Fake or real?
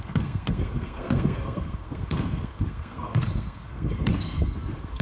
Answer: fake